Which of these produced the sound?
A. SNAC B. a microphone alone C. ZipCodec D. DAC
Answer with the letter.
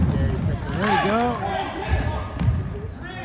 B